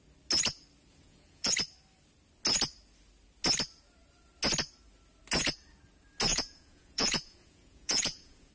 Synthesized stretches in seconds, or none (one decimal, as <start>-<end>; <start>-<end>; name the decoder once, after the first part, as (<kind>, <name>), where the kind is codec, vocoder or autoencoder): 0.9-1.5 (vocoder, Vocos); 6.3-8.5